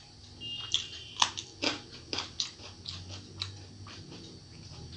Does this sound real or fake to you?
real